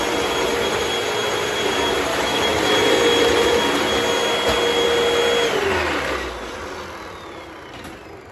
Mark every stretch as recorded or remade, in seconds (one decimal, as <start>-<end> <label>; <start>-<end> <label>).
0.0-2.1 recorded; 2.1-2.6 remade; 2.6-8.3 recorded